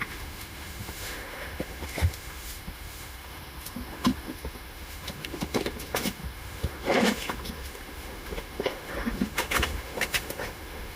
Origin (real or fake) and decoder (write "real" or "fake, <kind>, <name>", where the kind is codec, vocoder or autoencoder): fake, autoencoder, DAC-VAE